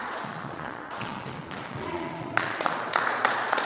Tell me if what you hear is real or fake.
fake